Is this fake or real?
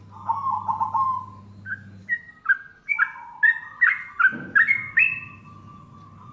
real